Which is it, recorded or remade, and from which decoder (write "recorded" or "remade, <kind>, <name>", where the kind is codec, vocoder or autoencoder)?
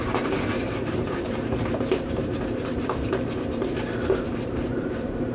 remade, vocoder, BigVGAN v2